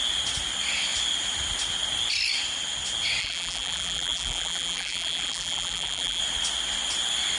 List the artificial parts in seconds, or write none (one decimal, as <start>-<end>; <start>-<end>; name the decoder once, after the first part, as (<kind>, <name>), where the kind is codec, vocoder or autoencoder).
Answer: 3.2-6.2 (vocoder, BigVGAN v2)